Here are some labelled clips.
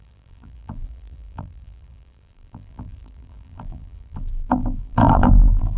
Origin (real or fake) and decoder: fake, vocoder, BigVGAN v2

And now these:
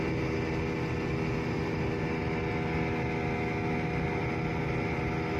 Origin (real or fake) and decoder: real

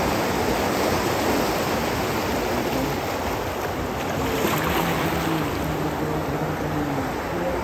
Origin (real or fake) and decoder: real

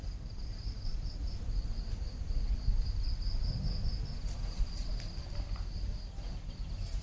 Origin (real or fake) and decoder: real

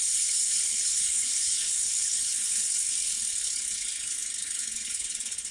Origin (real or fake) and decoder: fake, codec, HILCodec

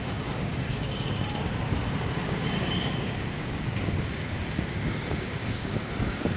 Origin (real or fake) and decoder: fake, codec, DAC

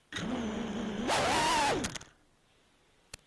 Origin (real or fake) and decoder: real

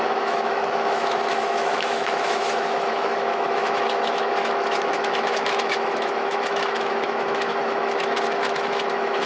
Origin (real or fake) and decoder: fake, autoencoder, DAC-VAE